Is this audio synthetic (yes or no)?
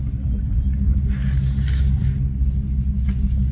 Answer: no